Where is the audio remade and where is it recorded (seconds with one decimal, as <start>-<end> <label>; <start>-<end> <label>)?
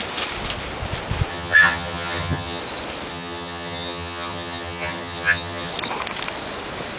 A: 0.0-1.3 recorded; 1.3-2.6 remade; 2.6-3.1 recorded; 3.1-5.7 remade; 5.7-7.0 recorded